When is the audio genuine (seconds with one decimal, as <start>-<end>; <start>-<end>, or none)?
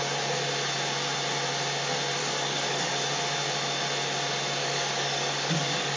0.0-2.2; 2.9-4.6